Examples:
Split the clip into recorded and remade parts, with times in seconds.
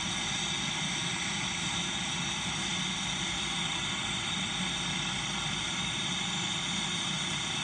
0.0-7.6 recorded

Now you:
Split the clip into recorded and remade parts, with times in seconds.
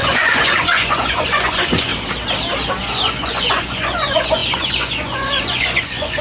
0.0-1.9 remade; 1.9-2.8 recorded; 2.8-6.2 remade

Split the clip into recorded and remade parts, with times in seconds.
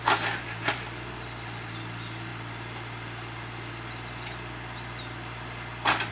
0.0-6.1 recorded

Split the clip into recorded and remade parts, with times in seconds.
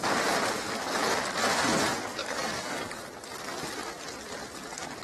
0.0-2.2 recorded; 2.2-3.0 remade; 3.0-5.0 recorded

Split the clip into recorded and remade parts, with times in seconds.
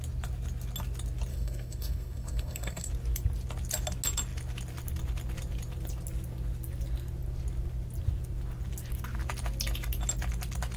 0.0-1.3 recorded; 1.3-2.9 remade; 2.9-10.8 recorded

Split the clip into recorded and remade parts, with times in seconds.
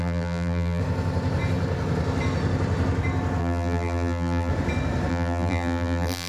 0.0-0.8 remade; 0.8-3.4 recorded; 3.4-4.5 remade; 4.5-5.1 recorded; 5.1-6.3 remade